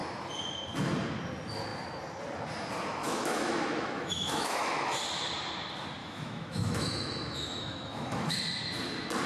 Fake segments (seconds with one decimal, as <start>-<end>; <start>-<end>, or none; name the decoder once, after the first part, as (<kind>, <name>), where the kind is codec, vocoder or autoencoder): 3.0-5.0 (autoencoder, DAC-VAE); 6.0-8.4

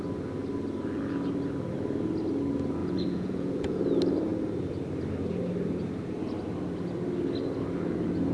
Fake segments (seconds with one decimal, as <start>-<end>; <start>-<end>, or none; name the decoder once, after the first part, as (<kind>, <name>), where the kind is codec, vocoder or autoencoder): 2.8-3.8 (vocoder, Vocos)

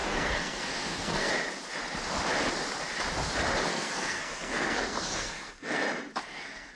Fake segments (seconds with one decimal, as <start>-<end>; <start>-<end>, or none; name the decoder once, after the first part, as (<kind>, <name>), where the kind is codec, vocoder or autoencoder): 0.0-1.3 (codec, SNAC); 3.7-5.8; 6.2-6.8

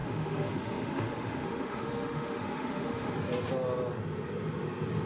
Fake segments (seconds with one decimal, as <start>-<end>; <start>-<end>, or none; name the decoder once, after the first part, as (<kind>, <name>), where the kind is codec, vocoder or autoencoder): 0.0-3.1 (autoencoder, DAC-VAE)

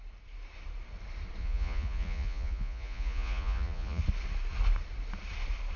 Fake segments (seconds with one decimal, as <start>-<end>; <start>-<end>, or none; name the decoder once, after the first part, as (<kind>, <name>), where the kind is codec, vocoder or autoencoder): 1.4-4.0 (vocoder, Vocos)

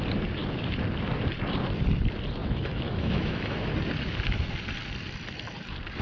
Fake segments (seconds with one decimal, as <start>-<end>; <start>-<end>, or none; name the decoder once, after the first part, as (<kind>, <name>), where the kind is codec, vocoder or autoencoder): 2.4-3.7 (autoencoder, DAC-VAE)